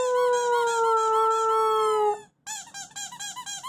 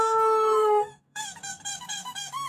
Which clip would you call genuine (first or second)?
first